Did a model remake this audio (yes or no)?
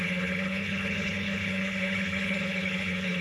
yes